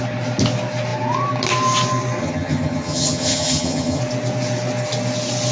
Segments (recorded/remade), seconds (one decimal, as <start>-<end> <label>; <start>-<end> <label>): 0.0-2.2 recorded; 2.2-4.0 remade; 4.0-5.5 recorded